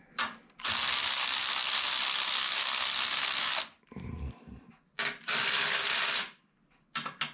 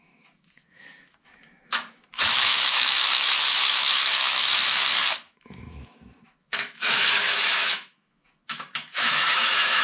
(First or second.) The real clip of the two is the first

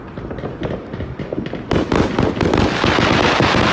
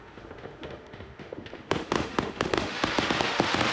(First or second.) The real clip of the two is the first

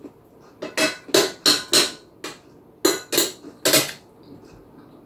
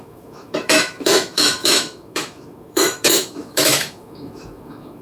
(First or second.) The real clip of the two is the first